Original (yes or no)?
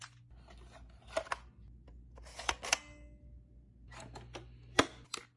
yes